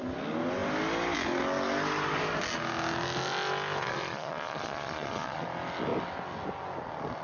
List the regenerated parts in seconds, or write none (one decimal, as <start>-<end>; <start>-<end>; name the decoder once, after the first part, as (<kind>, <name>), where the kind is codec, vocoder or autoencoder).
3.8-5.4 (vocoder, Vocos)